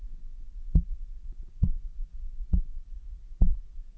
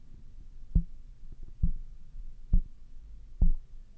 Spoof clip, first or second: first